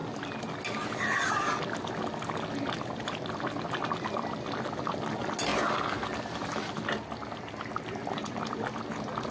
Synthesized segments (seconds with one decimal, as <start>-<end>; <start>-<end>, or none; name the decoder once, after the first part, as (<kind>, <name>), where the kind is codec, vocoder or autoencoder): none